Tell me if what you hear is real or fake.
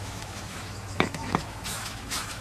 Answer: fake